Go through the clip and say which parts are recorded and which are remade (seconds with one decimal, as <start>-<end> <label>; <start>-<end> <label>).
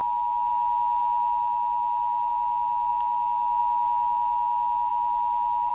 0.0-5.7 recorded